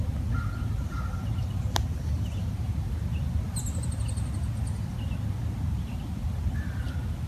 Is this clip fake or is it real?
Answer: real